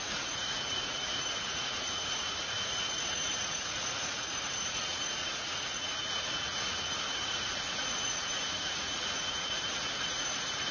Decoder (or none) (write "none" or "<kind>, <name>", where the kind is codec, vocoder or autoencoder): vocoder, Vocos